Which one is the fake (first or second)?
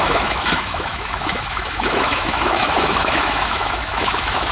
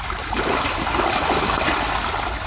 first